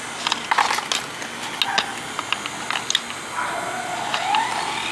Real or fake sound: real